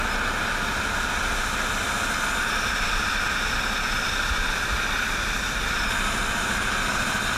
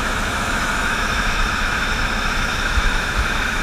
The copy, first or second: second